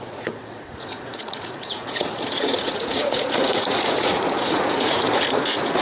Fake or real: fake